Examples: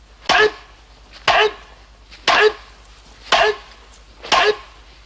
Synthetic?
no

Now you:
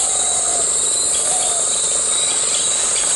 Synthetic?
no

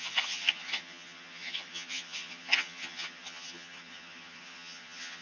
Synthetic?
yes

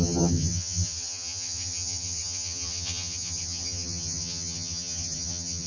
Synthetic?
yes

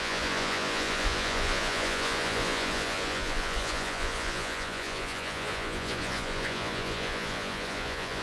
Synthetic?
yes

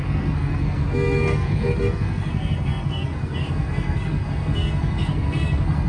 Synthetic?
yes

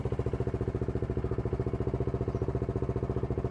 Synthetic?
no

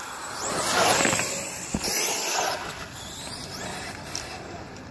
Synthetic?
no